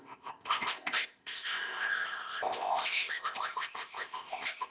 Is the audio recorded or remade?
remade